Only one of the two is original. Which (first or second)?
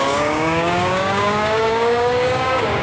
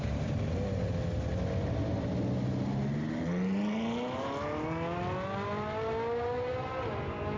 second